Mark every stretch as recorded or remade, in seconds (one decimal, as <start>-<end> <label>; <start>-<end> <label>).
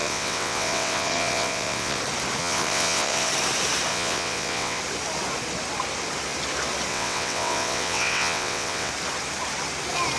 0.0-2.0 remade; 2.0-2.4 recorded; 2.4-3.3 remade; 3.3-3.9 recorded; 3.9-4.8 remade; 4.8-6.9 recorded; 6.9-8.9 remade; 8.9-10.2 recorded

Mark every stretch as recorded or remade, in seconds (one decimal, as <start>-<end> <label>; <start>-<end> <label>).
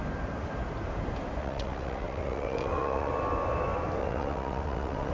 0.0-1.4 recorded; 1.4-3.1 remade; 3.1-4.0 recorded; 4.0-5.1 remade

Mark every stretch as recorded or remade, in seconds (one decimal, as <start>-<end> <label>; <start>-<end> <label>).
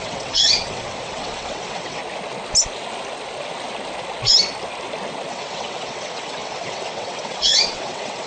0.0-2.0 remade; 2.0-5.3 recorded; 5.3-8.3 remade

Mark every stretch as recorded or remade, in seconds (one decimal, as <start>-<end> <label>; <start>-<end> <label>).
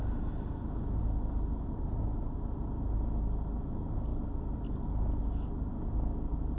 0.0-6.6 recorded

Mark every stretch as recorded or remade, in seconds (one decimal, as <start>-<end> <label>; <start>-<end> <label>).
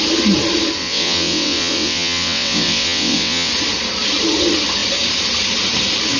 0.0-0.8 recorded; 0.8-3.5 remade; 3.5-6.2 recorded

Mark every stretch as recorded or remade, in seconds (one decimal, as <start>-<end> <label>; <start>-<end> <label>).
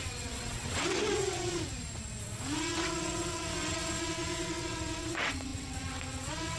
0.0-1.7 remade; 1.7-2.2 recorded; 2.2-6.6 remade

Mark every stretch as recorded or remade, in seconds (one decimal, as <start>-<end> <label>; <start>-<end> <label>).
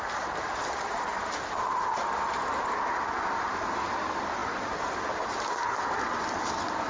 0.0-6.9 recorded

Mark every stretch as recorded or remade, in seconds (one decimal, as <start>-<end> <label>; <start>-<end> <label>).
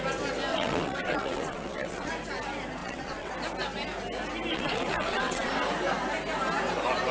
0.0-0.5 recorded; 0.5-2.1 remade; 2.1-2.8 recorded; 2.8-3.3 remade; 3.3-4.5 recorded; 4.5-5.5 remade; 5.5-7.1 recorded